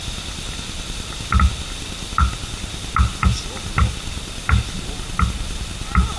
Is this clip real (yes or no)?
yes